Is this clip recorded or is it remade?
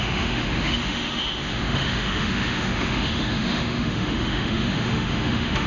remade